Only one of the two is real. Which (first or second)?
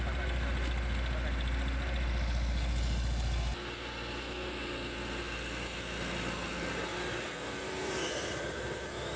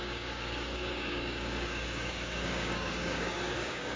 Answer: first